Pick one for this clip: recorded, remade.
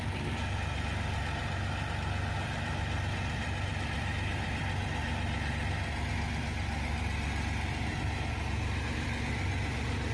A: recorded